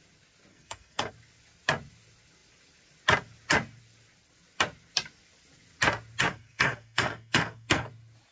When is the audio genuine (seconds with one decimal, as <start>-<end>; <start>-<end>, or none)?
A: 0.0-0.5; 1.1-6.3; 7.9-8.3